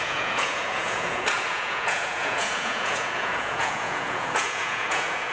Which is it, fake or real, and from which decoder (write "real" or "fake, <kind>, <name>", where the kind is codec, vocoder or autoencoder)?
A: fake, vocoder, Vocos